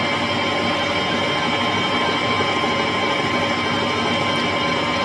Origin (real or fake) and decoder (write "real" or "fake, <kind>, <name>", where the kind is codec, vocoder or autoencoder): real